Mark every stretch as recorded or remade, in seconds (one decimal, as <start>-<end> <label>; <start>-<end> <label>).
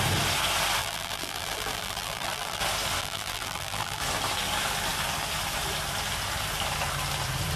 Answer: 0.0-0.8 recorded; 0.8-2.6 remade; 2.6-3.0 recorded; 3.0-4.0 remade; 4.0-7.6 recorded